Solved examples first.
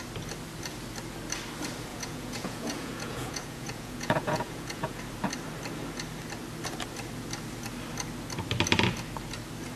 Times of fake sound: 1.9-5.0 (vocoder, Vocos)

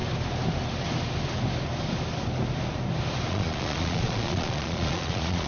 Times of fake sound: 3.3-5.5 (vocoder, Vocos)

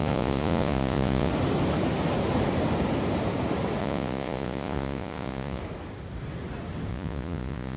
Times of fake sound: 0.0-1.3 (vocoder, Vocos); 3.8-5.6; 6.9-7.8

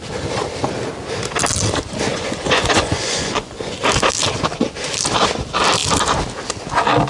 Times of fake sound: 2.1-3.8 (vocoder, Vocos)

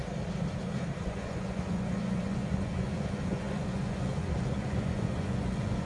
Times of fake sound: 1.0-5.9 (vocoder, Vocos)

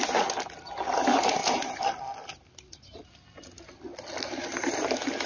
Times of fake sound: none

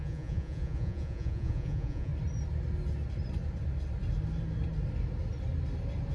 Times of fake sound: 0.0-2.1 (vocoder, Vocos)